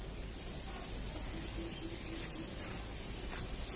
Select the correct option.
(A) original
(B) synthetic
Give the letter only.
A